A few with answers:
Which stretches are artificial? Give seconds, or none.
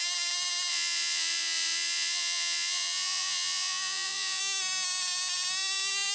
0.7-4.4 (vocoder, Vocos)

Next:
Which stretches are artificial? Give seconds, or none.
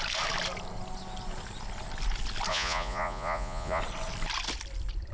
2.5-3.8 (vocoder, Vocos)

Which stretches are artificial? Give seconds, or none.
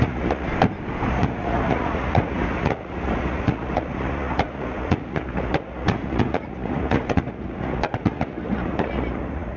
0.0-0.5 (vocoder, Vocos); 1.1-9.6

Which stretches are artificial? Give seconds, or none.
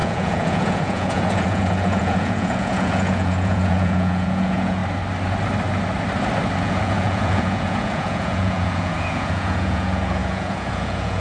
0.0-4.8 (vocoder, Vocos); 6.6-11.2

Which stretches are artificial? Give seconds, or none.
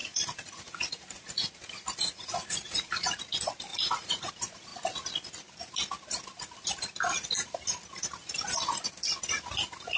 0.0-3.2 (vocoder, Vocos); 3.7-4.3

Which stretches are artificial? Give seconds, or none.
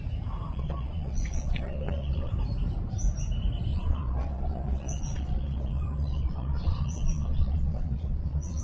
0.5-2.3 (vocoder, Vocos); 3.7-8.6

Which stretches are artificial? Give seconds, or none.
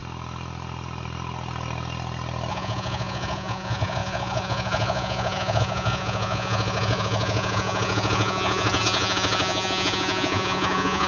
2.5-11.1 (vocoder, Vocos)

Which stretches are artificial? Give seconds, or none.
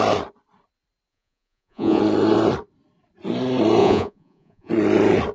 1.1-2.0 (vocoder, Vocos); 3.8-4.7